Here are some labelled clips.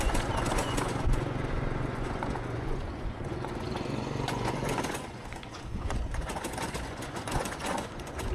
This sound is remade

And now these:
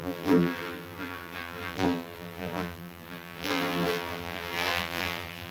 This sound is remade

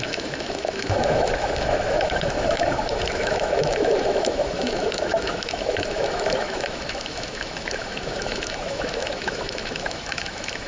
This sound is remade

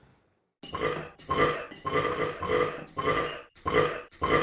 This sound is recorded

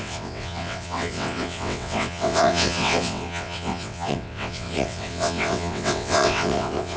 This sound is remade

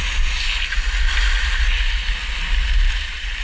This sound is recorded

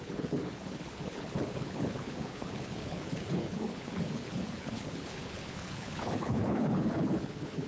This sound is remade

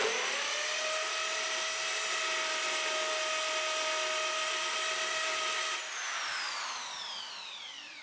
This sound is recorded